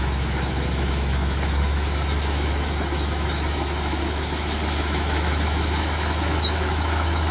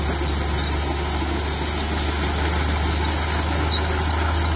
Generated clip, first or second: first